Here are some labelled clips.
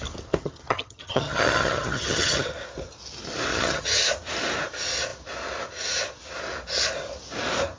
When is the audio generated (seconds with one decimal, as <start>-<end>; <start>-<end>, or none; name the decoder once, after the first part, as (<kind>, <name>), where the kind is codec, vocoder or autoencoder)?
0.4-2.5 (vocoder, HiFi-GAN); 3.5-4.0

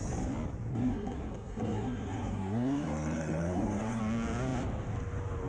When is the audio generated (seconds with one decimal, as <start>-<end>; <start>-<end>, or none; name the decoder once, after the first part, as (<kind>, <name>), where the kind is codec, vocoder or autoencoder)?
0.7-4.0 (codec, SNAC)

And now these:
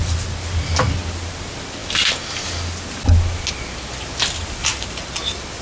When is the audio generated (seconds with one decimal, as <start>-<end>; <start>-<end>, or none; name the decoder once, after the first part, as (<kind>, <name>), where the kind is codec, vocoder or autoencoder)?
4.6-5.1 (vocoder, BigVGAN v2)

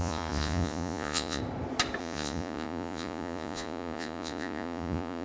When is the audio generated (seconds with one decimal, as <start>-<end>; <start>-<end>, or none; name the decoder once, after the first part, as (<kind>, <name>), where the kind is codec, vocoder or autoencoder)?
0.0-1.4 (vocoder, Vocos); 2.0-5.2